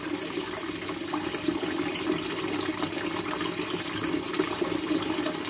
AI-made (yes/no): no